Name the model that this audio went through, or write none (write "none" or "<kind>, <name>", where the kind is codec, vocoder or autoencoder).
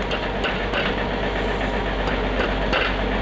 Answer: none